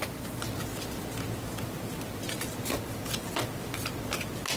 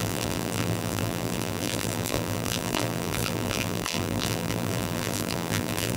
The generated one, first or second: second